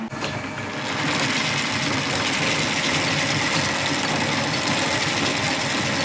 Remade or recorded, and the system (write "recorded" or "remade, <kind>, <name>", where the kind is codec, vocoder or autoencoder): recorded